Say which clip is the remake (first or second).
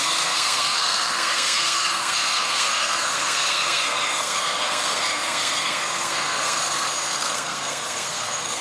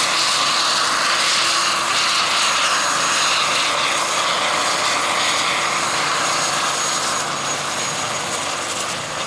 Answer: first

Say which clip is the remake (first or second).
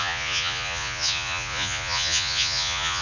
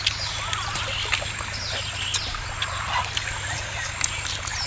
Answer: first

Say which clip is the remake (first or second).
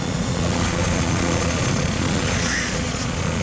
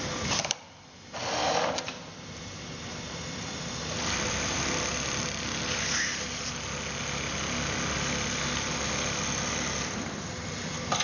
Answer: first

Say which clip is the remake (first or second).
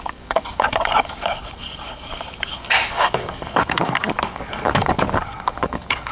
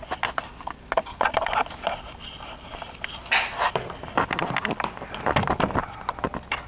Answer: first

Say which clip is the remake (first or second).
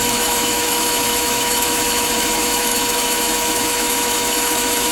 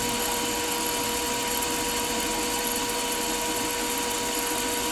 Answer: first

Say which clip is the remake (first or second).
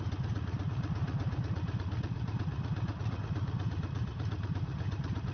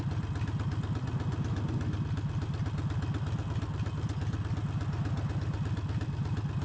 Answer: first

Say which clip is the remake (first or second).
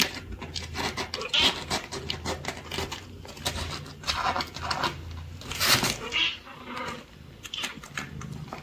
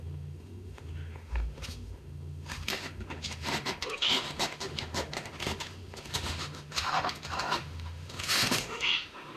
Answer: second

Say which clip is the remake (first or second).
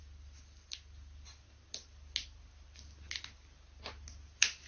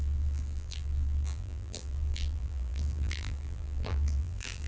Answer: second